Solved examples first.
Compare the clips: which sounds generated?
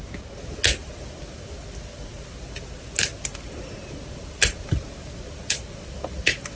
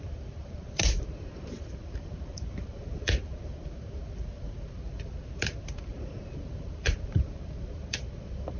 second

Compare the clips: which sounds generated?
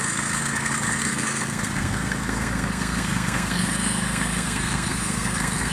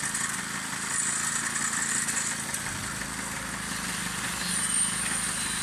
first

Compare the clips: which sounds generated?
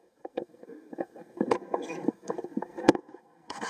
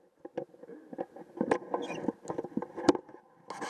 first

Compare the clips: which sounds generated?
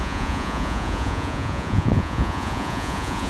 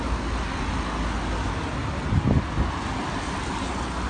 first